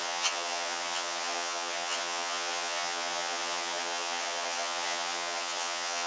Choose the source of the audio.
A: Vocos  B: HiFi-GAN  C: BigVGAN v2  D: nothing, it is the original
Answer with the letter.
B